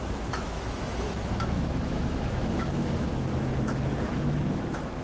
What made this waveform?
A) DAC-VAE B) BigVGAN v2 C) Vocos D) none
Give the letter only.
A